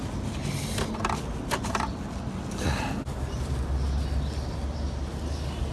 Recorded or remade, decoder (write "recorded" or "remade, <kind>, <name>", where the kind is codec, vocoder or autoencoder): recorded